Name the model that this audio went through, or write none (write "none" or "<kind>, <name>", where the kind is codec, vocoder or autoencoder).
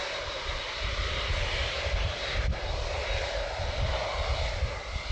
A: none